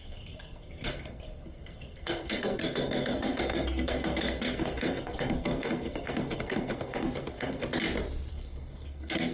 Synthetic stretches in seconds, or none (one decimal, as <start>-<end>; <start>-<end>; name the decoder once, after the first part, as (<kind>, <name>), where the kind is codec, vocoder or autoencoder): 0.0-7.6 (codec, SNAC); 8.3-9.3